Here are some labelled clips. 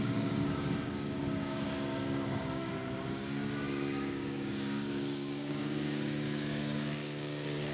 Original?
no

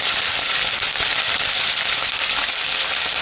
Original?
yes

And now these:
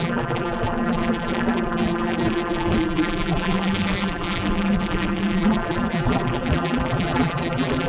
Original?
no